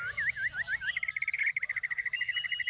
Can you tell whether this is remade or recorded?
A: recorded